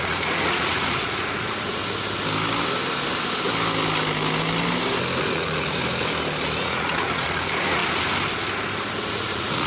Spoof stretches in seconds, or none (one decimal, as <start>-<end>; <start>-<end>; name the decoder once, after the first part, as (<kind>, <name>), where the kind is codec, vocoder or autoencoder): 0.0-1.8 (vocoder, Vocos); 5.2-5.8; 6.6-7.8; 9.1-9.7